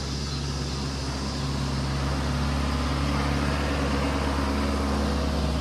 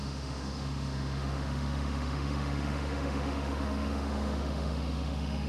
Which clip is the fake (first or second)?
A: second